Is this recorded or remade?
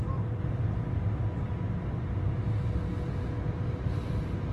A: recorded